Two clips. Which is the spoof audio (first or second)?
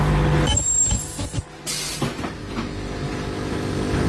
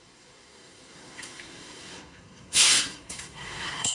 second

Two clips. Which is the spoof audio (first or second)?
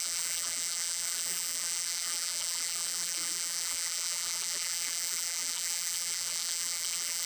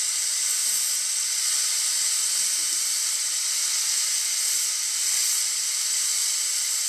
first